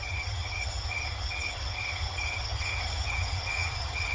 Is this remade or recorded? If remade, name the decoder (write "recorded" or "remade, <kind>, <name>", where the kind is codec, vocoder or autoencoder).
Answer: remade, vocoder, HiFi-GAN